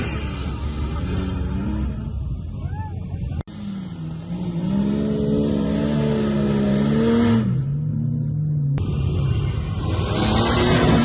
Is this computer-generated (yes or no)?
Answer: no